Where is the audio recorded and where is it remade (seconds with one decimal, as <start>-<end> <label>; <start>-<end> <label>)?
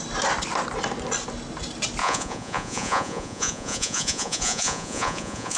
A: 0.0-2.0 recorded; 2.0-5.6 remade